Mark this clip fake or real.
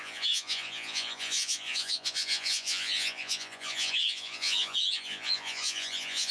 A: fake